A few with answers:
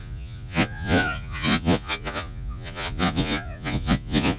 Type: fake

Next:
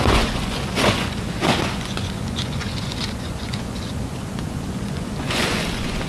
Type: fake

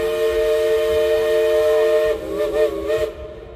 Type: real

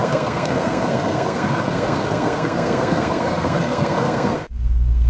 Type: fake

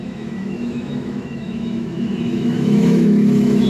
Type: fake